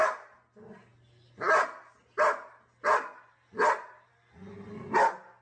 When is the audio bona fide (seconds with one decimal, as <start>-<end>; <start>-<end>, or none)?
0.0-5.4